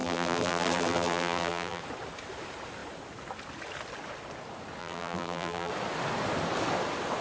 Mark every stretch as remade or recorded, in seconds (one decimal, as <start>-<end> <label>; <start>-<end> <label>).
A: 0.0-1.8 remade; 1.8-4.8 recorded; 4.8-5.7 remade; 5.7-7.2 recorded